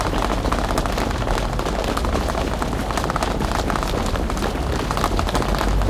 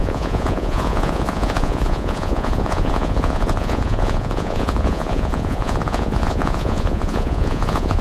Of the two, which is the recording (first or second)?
first